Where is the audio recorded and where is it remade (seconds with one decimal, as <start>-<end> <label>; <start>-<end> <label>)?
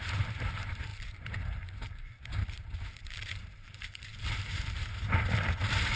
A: 0.0-6.0 remade